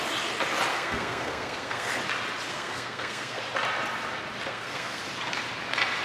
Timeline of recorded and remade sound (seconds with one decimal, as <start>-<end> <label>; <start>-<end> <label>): 0.0-0.7 recorded; 0.7-1.9 remade; 1.9-2.5 recorded; 2.5-3.4 remade; 3.4-4.5 recorded; 4.5-5.0 remade; 5.0-6.0 recorded